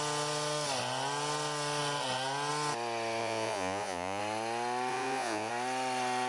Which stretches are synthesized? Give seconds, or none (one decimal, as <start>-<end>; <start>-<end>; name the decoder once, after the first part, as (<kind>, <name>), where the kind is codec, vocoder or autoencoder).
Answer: 3.2-4.2 (vocoder, Vocos); 4.9-5.5